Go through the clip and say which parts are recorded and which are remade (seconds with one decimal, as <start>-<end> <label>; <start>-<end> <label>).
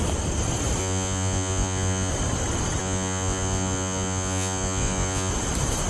0.0-0.8 recorded; 0.8-2.1 remade; 2.1-2.8 recorded; 2.8-5.3 remade; 5.3-5.9 recorded